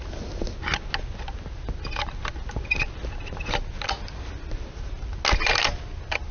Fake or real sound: real